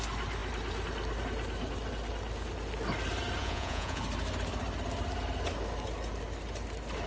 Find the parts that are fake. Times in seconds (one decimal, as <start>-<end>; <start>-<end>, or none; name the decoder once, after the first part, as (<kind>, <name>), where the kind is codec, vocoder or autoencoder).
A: 3.4-4.0 (vocoder, Vocos)

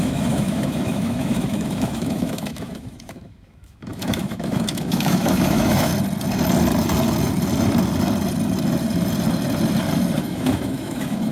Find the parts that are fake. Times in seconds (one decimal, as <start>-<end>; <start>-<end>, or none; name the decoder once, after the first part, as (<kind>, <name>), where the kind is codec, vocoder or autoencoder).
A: 0.0-5.9 (autoencoder, DAC-VAE); 10.2-11.3

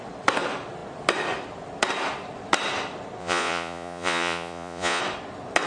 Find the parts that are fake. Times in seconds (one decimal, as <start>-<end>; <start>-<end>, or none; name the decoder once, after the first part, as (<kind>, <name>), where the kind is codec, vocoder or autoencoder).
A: 3.2-5.0 (vocoder, Vocos)

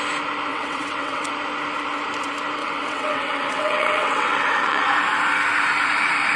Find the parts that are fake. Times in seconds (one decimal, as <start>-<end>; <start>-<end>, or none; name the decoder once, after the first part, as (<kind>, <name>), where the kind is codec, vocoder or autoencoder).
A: 0.5-1.3 (vocoder, WaveNeXt); 2.6-4.9

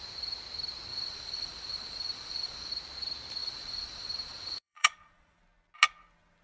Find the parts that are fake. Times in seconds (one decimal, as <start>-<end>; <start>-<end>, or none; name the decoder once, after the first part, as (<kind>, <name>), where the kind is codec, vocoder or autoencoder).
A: 0.9-2.7 (vocoder, Vocos); 3.4-5.4

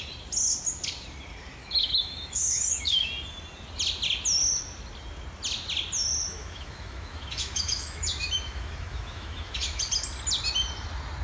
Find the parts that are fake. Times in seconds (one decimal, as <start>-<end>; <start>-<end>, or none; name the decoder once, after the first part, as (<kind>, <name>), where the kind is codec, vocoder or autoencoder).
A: 1.6-3.1 (autoencoder, DAC-VAE); 6.3-9.8